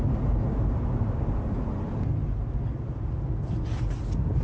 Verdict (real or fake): real